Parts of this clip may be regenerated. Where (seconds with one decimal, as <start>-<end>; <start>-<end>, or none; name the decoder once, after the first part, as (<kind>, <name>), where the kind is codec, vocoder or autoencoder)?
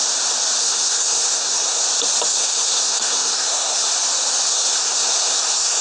0.6-1.8 (codec, SNAC); 2.3-3.9; 4.5-5.8